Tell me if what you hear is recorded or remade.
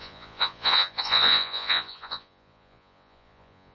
remade